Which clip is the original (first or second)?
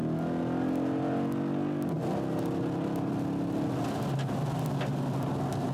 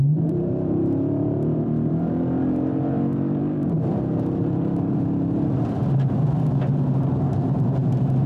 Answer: first